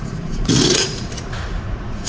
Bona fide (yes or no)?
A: no